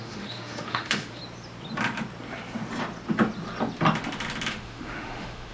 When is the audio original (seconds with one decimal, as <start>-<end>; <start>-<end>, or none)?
1.2-4.5